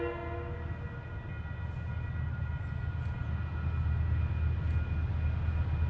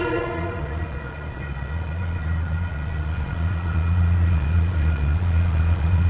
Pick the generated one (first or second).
second